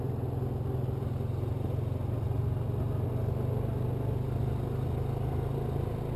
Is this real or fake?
real